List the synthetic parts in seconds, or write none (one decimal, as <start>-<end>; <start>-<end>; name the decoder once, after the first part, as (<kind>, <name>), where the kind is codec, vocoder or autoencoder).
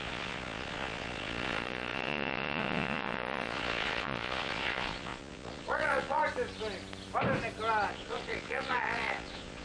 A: 0.0-6.2 (vocoder, Vocos); 7.9-9.6